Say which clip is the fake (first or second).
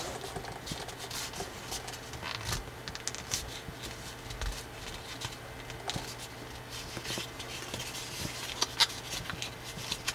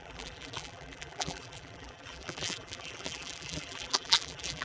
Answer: second